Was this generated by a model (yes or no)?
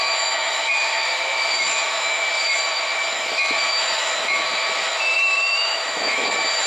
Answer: yes